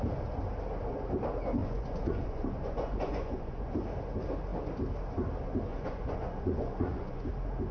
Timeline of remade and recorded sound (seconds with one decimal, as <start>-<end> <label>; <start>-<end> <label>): 0.0-1.6 recorded; 1.6-3.7 remade; 3.7-5.7 recorded; 5.7-7.3 remade; 7.3-7.7 recorded